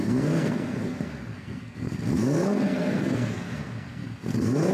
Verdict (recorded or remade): remade